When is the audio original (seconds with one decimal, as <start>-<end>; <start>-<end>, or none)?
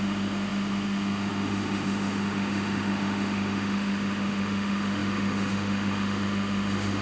none